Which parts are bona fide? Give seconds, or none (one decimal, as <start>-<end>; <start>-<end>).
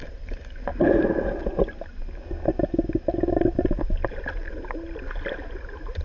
0.0-6.0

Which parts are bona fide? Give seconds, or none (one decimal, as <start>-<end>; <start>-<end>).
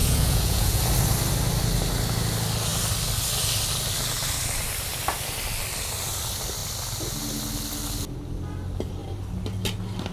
0.8-10.1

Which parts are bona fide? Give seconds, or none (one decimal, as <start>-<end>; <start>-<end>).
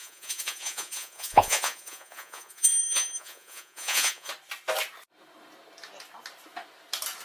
4.3-7.2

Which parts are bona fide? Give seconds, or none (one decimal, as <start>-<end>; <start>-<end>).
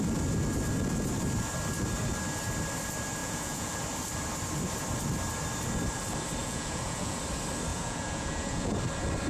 0.0-3.2; 3.8-6.4; 7.2-7.7; 8.8-9.3